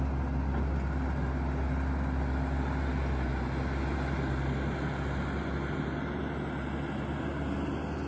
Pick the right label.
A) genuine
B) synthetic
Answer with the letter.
A